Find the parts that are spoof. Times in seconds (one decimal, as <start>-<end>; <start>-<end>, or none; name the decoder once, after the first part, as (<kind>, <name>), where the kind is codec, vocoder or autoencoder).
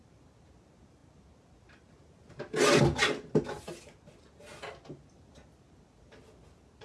none